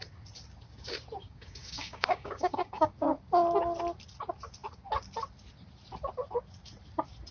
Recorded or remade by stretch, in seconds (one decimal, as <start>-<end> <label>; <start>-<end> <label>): 0.0-1.2 recorded; 1.2-2.9 remade; 2.9-7.3 recorded